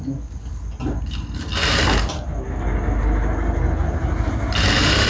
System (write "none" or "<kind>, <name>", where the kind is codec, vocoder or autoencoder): none